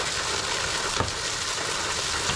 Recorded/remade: recorded